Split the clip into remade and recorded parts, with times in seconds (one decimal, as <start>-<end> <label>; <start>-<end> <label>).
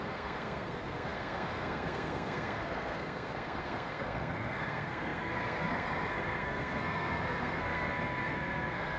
0.0-9.0 remade